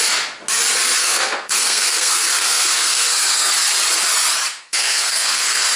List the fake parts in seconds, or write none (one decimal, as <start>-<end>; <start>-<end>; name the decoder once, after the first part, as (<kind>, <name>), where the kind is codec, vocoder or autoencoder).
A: 1.0-3.5 (codec, SNAC); 4.5-5.8